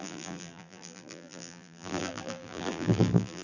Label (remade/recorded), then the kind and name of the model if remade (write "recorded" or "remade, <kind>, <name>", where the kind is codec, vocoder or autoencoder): remade, vocoder, BigVGAN v2